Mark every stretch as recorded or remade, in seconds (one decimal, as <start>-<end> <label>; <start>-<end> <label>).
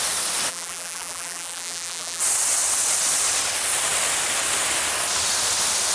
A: 0.0-0.5 recorded; 0.5-2.2 remade; 2.2-5.9 recorded